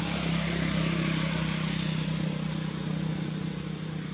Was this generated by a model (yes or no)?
no